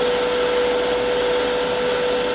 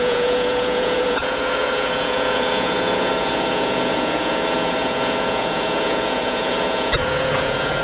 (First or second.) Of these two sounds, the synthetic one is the second